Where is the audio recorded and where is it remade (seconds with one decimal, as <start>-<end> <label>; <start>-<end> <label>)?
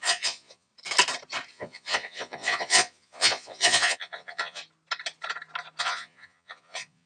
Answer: 0.0-0.7 remade; 0.7-1.5 recorded; 1.5-4.6 remade; 4.6-5.8 recorded; 5.8-7.1 remade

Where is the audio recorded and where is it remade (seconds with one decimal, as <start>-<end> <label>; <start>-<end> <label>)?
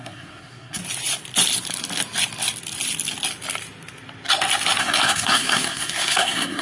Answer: 0.0-0.8 remade; 0.8-4.8 recorded; 4.8-6.6 remade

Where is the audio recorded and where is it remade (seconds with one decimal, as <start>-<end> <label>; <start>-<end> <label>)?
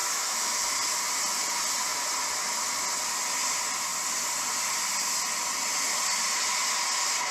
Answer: 0.0-0.6 remade; 0.6-7.3 recorded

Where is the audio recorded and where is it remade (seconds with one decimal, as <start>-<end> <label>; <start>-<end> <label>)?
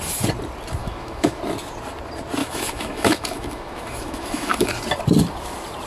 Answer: 0.0-0.8 recorded; 0.8-1.4 remade; 1.4-2.4 recorded; 2.4-4.7 remade; 4.7-5.9 recorded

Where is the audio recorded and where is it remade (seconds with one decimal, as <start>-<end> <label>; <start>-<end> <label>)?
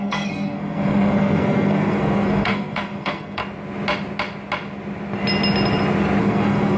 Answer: 0.0-3.4 remade; 3.4-6.2 recorded; 6.2-6.8 remade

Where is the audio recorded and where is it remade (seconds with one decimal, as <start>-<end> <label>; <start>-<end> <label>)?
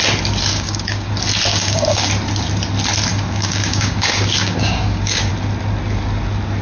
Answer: 0.0-0.5 recorded; 0.5-1.1 remade; 1.1-1.5 recorded; 1.5-2.1 remade; 2.1-3.1 recorded; 3.1-5.3 remade; 5.3-6.6 recorded